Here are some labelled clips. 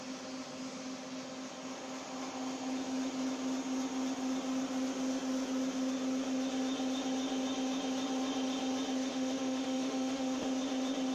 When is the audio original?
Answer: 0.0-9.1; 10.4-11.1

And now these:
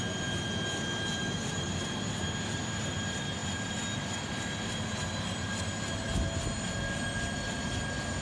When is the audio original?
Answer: 0.0-8.2

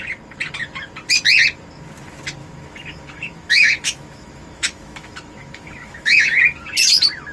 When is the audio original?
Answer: 0.0-2.4; 6.4-7.3

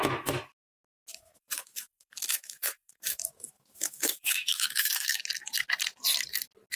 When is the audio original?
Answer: 0.0-1.1; 5.2-6.8

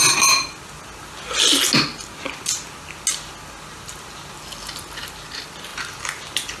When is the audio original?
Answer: 0.0-6.6